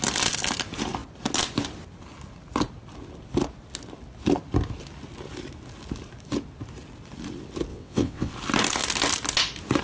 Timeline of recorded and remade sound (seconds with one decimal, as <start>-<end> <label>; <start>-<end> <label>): 0.0-7.7 recorded; 7.7-8.3 remade; 8.3-9.8 recorded